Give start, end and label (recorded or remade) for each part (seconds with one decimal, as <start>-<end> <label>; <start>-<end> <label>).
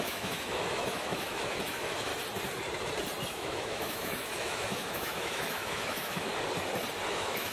0.0-2.1 remade; 2.1-3.3 recorded; 3.3-6.3 remade; 6.3-7.1 recorded; 7.1-7.5 remade